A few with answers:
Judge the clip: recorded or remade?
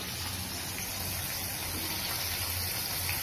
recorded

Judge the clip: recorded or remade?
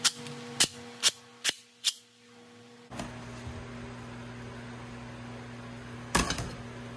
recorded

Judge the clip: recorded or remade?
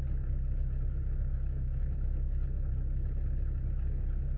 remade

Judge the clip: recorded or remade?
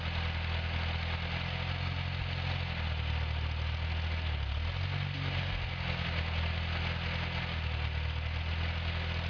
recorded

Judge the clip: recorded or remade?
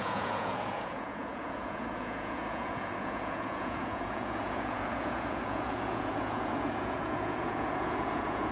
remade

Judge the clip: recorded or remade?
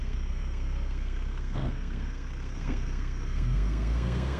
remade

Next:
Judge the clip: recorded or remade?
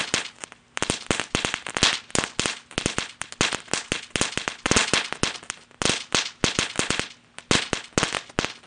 recorded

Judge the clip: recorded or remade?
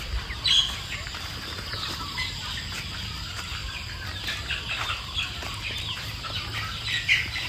recorded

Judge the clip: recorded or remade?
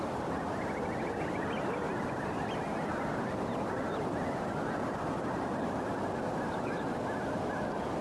recorded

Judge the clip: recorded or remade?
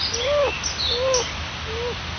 recorded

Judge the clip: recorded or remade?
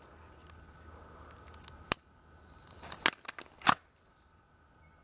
recorded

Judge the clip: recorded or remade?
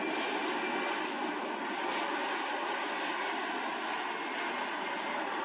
recorded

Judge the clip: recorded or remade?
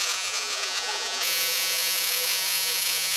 remade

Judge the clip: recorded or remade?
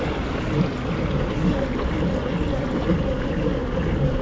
recorded